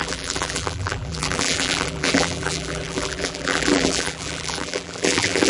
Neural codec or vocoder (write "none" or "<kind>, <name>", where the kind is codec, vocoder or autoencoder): vocoder, BigVGAN v2